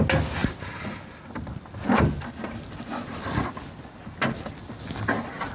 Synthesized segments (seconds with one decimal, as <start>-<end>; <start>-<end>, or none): none